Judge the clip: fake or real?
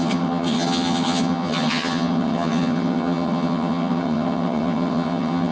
fake